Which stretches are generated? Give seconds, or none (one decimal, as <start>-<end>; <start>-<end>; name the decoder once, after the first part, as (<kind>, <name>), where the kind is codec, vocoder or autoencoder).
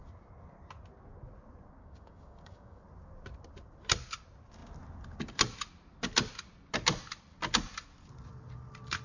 1.8-2.8 (codec, DAC)